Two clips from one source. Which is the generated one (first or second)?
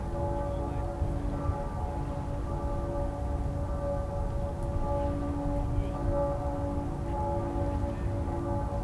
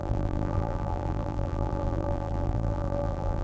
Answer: second